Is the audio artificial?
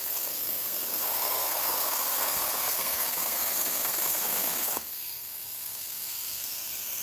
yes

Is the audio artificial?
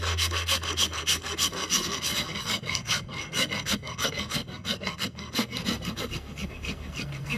yes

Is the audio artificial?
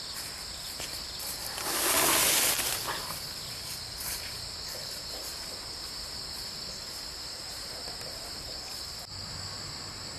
no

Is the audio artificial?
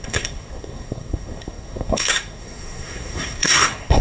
yes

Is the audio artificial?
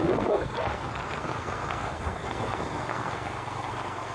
yes